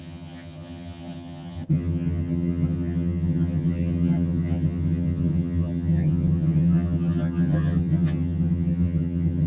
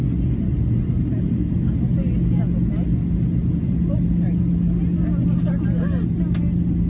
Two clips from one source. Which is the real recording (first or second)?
second